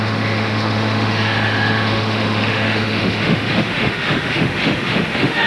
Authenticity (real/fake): fake